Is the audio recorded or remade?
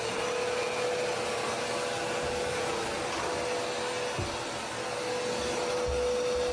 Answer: recorded